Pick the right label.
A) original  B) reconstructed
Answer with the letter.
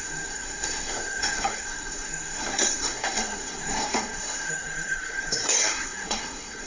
B